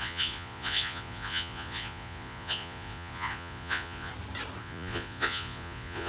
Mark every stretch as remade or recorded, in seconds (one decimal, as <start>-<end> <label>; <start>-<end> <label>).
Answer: 0.0-4.1 remade; 4.1-4.6 recorded; 4.6-6.1 remade